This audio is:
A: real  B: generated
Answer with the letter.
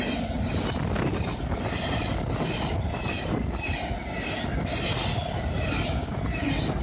A